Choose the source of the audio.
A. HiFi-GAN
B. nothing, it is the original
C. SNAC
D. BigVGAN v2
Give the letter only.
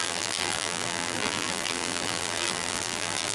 D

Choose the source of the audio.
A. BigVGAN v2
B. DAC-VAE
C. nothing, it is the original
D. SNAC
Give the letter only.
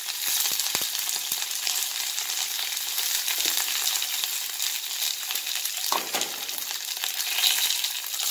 C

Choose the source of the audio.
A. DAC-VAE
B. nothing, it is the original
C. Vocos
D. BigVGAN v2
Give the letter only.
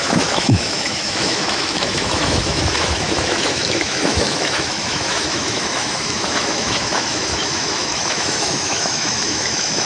A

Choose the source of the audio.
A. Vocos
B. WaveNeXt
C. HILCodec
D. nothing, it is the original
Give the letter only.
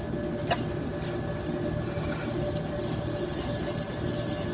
D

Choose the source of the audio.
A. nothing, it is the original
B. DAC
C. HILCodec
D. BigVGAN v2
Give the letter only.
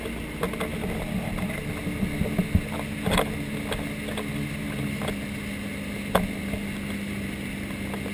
A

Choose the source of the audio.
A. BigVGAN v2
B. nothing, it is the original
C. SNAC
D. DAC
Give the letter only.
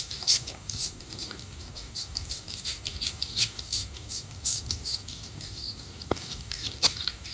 D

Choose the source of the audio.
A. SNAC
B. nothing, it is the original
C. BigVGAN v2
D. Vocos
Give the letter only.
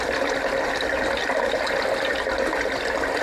B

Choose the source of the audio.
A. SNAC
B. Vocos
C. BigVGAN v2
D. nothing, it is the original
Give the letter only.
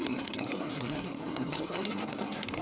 A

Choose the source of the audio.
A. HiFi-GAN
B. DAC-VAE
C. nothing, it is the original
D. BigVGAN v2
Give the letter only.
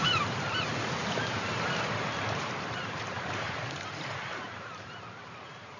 D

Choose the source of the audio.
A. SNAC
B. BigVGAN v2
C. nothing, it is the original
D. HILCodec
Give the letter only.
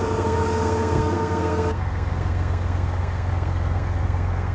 A